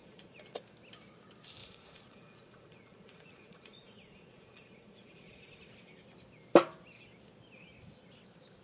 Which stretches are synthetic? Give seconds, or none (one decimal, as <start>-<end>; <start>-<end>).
0.0-0.6; 1.6-5.7